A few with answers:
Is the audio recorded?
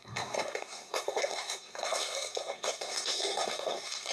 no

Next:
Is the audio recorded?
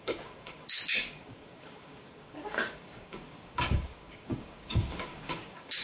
no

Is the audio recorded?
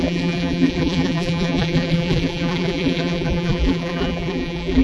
no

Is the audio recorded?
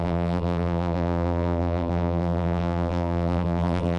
no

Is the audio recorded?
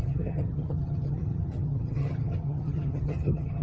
no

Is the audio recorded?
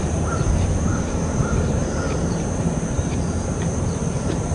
no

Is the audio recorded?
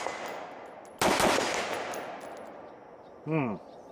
yes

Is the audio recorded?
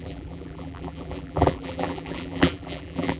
no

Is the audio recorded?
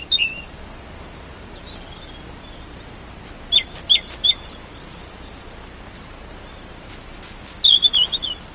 yes